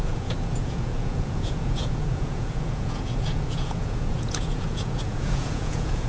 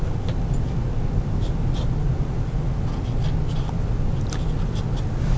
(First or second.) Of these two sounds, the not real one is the first